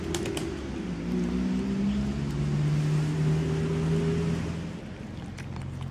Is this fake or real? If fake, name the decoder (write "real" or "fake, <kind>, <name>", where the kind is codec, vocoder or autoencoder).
real